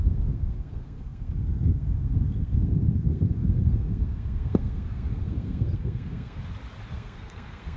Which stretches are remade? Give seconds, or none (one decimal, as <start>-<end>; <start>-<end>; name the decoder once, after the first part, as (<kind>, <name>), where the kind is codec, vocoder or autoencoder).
0.0-6.4 (codec, SNAC); 6.9-7.8